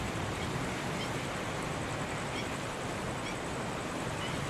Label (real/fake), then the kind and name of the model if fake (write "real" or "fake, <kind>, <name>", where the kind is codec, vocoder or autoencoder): real